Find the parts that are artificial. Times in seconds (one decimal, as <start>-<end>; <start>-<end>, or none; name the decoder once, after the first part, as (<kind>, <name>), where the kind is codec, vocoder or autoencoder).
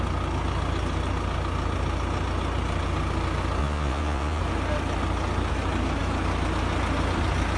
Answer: 3.6-4.4 (vocoder, Vocos)